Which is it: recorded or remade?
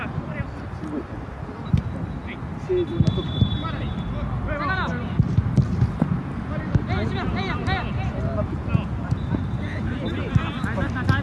recorded